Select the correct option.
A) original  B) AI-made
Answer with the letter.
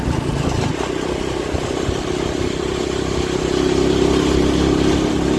A